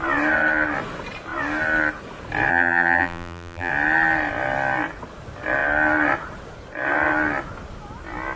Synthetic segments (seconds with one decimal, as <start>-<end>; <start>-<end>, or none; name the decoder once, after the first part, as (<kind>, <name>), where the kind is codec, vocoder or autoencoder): 2.5-3.7 (vocoder, BigVGAN v2)